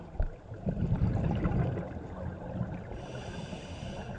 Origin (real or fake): real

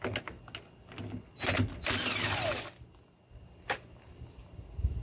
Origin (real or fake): real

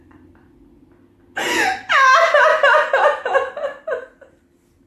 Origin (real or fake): real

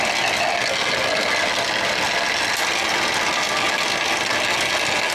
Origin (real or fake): real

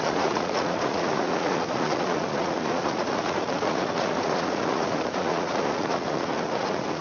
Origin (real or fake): fake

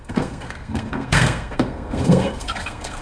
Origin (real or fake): fake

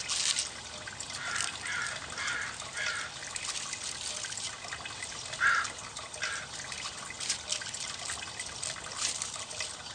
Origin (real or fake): real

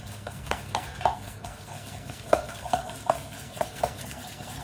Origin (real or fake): fake